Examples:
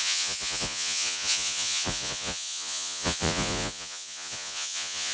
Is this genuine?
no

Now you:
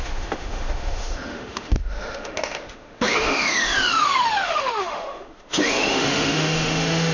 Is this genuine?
no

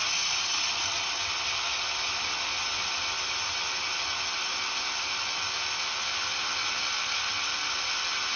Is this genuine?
yes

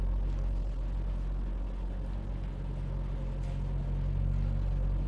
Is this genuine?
yes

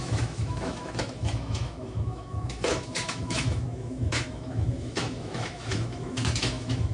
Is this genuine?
no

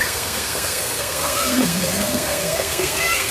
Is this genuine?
no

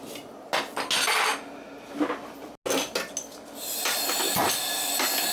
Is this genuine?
yes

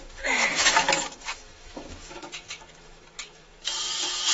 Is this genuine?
no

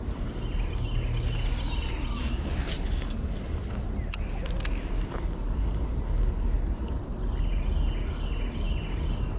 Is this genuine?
yes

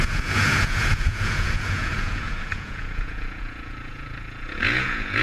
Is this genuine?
no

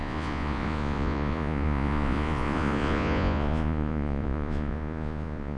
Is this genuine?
no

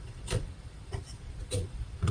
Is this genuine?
no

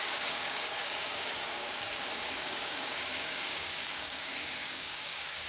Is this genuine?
no